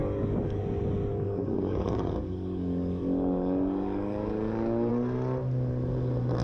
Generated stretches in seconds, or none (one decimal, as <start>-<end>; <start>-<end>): 0.0-0.6; 1.1-4.9